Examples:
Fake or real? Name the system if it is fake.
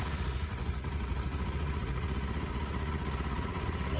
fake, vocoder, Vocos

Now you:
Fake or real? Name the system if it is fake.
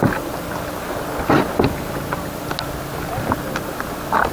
real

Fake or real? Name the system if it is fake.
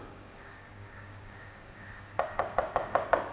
fake, codec, DAC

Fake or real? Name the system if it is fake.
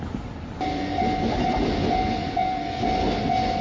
real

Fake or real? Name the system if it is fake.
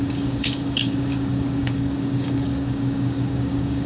fake, codec, DAC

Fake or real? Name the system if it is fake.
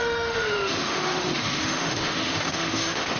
fake, autoencoder, DAC-VAE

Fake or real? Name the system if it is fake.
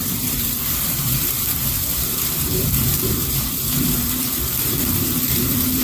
fake, vocoder, BigVGAN v2